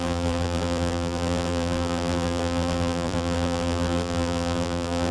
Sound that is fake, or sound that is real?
fake